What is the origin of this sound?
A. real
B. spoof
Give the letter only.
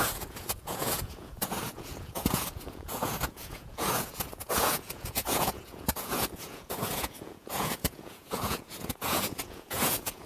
B